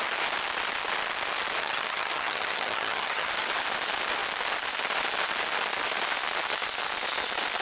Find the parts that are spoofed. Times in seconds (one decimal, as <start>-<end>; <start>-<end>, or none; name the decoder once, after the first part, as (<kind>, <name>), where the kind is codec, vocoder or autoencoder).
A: 1.6-3.3 (vocoder, HiFi-GAN)